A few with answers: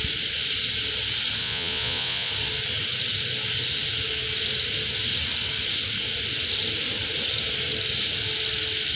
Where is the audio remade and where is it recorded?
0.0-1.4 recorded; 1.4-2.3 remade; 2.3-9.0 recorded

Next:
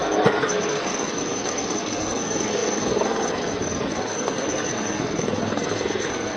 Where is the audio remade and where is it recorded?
0.0-6.4 remade